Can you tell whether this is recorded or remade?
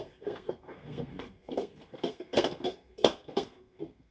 remade